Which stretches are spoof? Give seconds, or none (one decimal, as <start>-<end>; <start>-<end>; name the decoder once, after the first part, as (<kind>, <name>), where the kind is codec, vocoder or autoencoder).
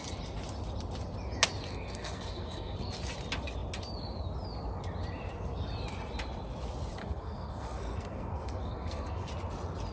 1.7-2.9 (codec, SNAC); 7.0-9.3